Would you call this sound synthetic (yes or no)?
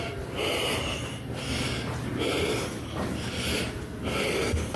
no